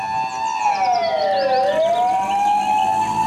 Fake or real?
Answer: real